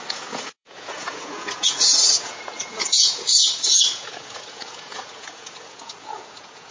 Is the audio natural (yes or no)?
no